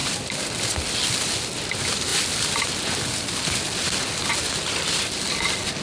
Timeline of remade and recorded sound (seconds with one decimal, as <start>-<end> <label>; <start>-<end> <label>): 0.0-5.8 recorded